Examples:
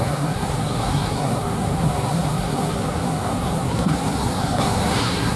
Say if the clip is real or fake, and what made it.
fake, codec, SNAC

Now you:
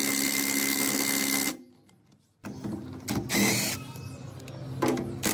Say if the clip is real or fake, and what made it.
real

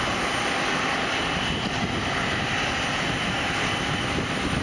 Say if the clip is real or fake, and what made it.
real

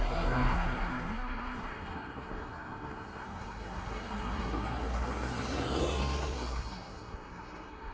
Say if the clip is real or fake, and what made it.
fake, codec, SNAC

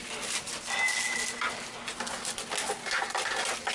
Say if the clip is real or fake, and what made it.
real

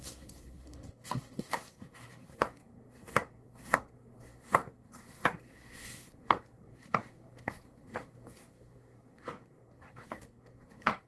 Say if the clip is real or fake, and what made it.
fake, codec, SNAC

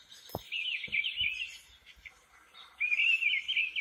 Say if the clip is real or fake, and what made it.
real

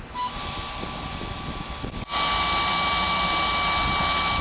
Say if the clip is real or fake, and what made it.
real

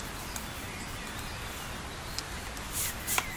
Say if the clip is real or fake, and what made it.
real